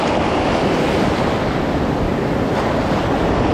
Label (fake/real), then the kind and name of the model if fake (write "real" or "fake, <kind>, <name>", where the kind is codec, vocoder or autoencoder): real